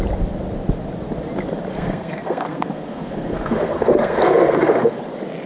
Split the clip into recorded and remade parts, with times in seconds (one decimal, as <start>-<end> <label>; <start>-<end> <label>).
0.0-1.7 recorded; 1.7-5.0 remade; 5.0-5.5 recorded